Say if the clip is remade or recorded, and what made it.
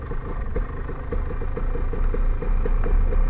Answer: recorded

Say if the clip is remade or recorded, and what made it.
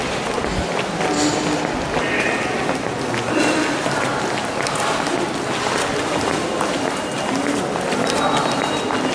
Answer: recorded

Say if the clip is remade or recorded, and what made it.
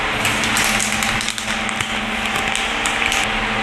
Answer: recorded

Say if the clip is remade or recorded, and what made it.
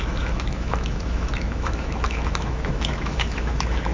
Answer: remade, autoencoder, DAC-VAE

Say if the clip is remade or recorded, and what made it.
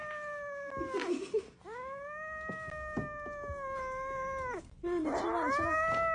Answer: recorded